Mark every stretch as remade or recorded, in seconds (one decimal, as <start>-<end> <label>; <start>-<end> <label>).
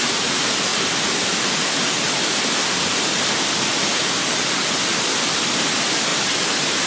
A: 0.0-6.9 recorded